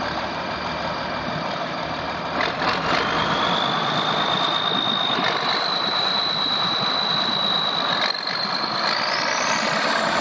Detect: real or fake real